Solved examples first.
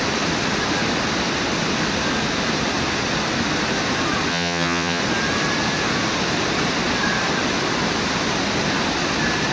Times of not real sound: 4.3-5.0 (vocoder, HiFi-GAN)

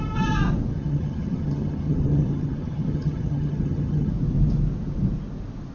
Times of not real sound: 0.7-4.1 (vocoder, HiFi-GAN)